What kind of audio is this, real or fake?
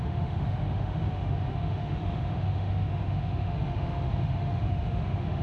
fake